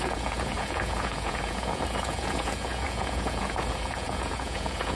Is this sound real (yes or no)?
no